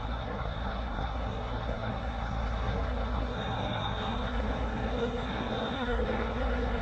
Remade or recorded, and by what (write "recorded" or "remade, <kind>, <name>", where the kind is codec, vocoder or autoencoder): remade, codec, SNAC